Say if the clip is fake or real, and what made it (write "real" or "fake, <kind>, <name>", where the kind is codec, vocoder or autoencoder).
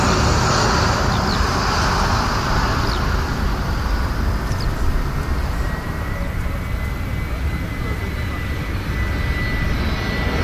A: real